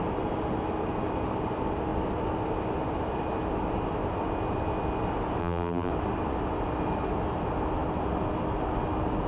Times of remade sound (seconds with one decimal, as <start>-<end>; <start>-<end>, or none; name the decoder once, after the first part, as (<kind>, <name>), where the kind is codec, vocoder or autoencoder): 5.4-5.9 (vocoder, BigVGAN v2)